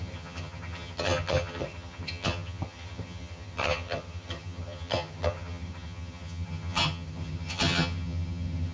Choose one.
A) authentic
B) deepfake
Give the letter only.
B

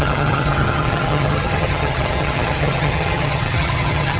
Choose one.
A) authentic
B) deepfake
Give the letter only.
B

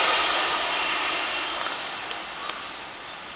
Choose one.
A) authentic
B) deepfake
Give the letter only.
A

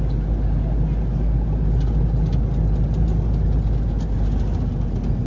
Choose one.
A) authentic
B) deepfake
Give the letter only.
A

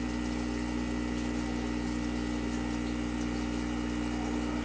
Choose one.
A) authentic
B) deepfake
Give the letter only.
A